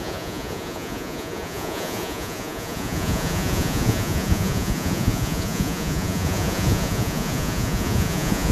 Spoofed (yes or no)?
yes